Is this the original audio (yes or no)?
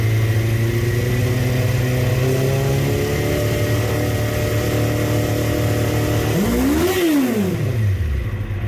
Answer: yes